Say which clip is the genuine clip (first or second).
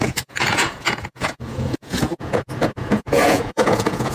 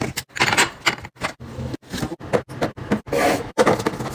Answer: second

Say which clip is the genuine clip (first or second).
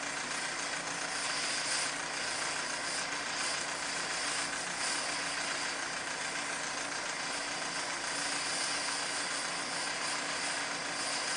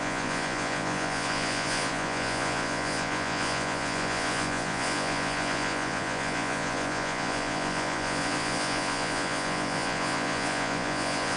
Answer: first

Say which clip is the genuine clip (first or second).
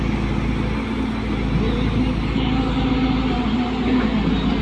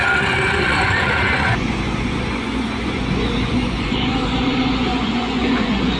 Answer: first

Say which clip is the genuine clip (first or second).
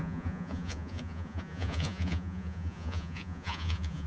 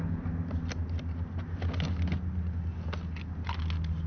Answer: second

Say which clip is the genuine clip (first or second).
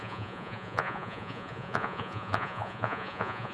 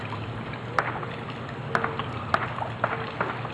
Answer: second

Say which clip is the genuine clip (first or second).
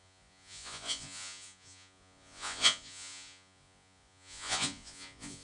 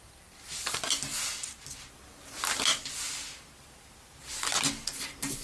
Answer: second